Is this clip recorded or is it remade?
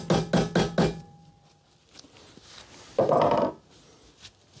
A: recorded